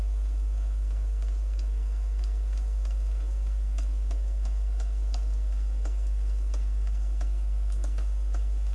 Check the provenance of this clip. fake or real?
fake